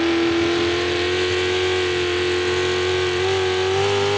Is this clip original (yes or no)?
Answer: yes